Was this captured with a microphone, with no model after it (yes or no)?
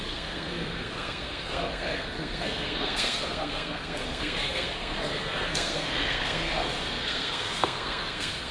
no